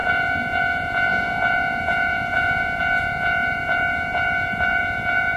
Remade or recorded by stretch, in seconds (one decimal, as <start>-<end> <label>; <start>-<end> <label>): 0.0-5.4 remade